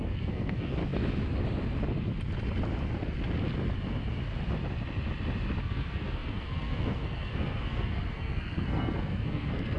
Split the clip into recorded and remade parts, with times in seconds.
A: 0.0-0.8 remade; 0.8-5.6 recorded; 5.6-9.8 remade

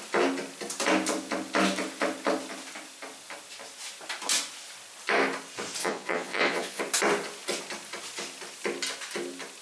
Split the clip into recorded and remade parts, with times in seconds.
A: 0.0-5.8 recorded; 5.8-6.8 remade; 6.8-9.6 recorded

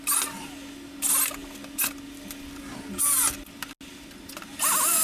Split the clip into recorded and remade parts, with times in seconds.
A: 0.0-5.0 recorded